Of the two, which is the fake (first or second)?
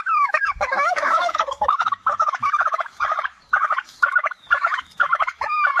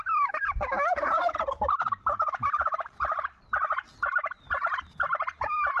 first